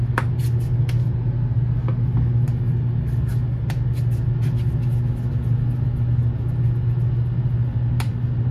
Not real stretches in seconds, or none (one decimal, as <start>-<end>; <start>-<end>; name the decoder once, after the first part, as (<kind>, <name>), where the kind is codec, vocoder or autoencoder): none